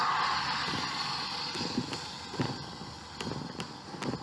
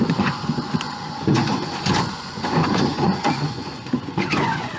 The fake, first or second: second